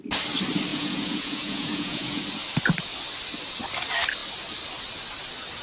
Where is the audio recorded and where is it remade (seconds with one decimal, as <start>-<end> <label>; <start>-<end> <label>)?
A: 0.0-0.7 recorded; 0.7-2.2 remade; 2.2-5.6 recorded